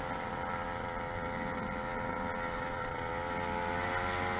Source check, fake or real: real